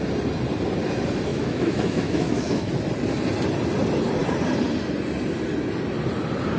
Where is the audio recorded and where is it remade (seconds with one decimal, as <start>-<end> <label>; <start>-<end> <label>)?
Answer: 0.0-1.3 recorded; 1.3-2.7 remade; 2.7-6.6 recorded